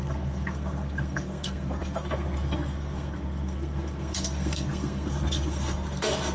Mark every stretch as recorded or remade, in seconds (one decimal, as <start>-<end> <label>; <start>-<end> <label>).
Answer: 0.0-6.3 remade